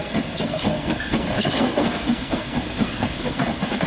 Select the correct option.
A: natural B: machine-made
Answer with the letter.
B